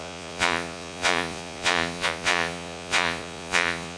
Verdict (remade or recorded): remade